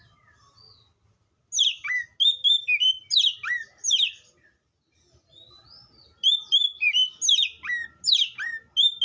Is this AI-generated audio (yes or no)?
no